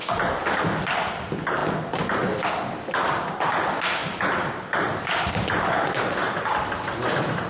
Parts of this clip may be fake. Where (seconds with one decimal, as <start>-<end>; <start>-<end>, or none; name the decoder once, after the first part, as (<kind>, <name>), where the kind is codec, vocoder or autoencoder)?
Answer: 4.0-5.0 (vocoder, BigVGAN v2)